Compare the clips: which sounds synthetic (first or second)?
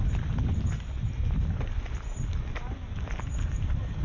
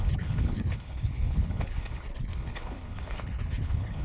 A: second